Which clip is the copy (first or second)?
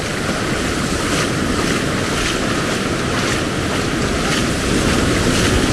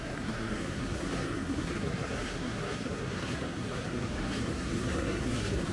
second